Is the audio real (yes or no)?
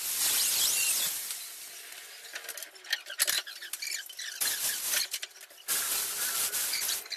yes